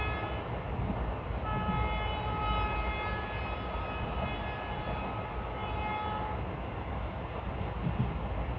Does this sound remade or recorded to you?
recorded